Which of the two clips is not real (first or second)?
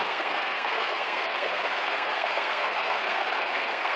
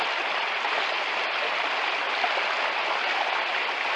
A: first